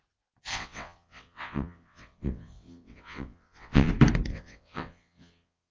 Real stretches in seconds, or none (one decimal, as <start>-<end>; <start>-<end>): 0.0-0.5; 3.9-4.3